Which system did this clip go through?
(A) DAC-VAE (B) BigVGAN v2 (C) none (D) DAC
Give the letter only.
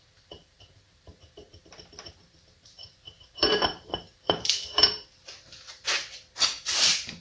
B